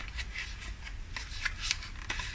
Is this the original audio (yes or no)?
yes